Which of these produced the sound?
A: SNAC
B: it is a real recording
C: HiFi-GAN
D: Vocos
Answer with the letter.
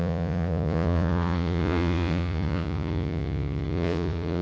D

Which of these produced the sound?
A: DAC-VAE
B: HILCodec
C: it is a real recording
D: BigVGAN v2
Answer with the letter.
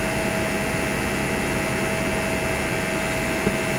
C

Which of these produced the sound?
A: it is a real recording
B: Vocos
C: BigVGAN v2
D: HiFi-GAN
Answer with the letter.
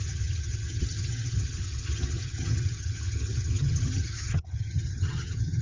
D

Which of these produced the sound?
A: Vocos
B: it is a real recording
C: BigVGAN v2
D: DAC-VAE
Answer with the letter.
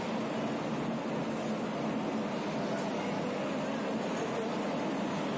B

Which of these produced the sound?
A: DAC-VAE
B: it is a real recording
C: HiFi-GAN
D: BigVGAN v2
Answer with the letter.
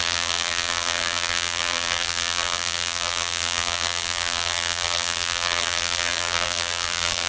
D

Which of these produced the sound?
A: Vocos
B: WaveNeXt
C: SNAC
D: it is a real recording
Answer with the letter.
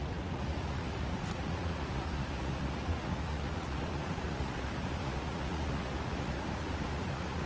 A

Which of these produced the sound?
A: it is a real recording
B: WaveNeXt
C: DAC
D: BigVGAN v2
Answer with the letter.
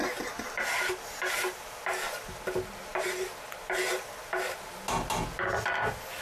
A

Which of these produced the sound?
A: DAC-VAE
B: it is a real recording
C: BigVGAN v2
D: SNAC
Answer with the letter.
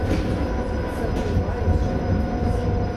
B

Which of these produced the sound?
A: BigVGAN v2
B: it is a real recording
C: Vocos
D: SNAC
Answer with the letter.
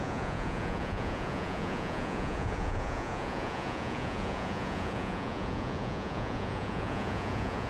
C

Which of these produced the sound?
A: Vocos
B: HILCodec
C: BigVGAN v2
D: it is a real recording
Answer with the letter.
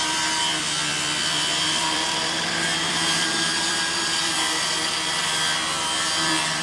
C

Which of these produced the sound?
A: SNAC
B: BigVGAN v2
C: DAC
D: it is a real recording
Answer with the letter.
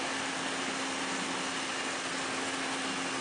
D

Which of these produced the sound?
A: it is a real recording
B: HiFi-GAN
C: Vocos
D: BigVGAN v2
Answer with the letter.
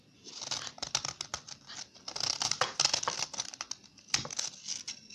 A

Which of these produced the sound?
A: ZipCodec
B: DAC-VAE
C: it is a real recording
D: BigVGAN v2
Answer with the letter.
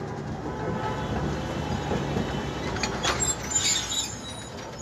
C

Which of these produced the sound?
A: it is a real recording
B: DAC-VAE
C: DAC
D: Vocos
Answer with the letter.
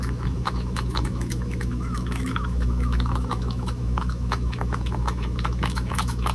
B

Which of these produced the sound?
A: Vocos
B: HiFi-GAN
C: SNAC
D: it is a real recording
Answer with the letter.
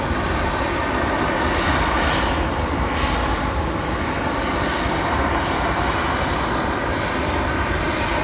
D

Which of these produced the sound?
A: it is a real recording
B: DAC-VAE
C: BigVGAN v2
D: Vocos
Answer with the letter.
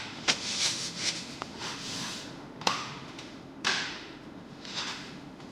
B